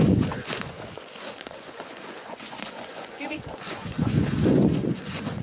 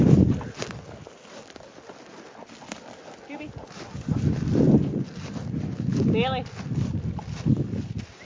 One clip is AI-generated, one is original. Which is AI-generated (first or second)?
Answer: first